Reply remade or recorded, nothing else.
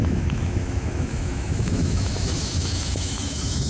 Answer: remade